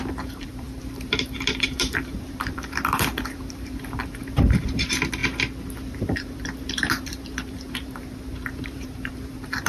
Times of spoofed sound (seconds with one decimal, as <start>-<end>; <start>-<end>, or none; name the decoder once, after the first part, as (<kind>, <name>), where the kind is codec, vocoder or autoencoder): 0.0-5.2 (vocoder, BigVGAN v2); 5.9-9.7